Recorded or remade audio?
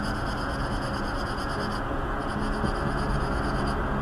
remade